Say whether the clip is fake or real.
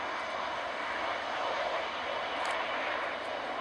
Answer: real